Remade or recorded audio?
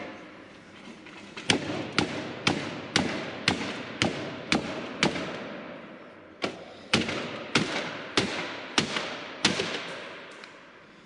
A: recorded